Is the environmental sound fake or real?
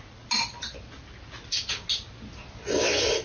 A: real